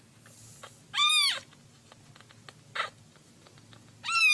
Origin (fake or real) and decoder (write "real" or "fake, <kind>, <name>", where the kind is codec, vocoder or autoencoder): real